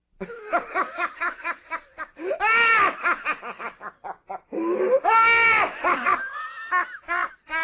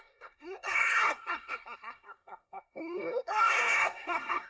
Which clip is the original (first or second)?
first